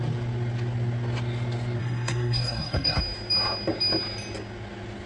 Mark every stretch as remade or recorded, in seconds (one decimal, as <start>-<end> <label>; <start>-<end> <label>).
0.0-1.8 recorded; 1.8-3.0 remade; 3.0-5.1 recorded